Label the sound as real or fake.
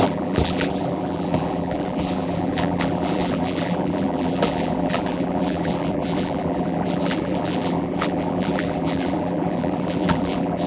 fake